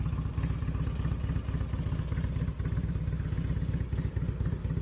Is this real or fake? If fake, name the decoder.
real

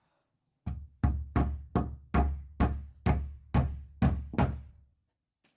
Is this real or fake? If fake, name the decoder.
real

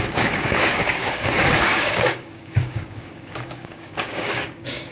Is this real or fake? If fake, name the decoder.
fake, codec, DAC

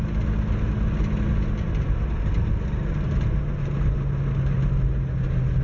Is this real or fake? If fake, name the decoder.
real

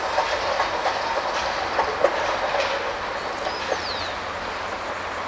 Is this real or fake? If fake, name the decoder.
real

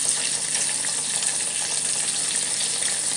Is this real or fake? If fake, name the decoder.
real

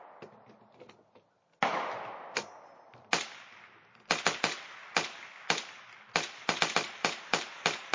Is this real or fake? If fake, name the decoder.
real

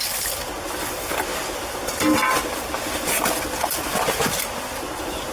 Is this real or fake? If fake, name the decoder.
real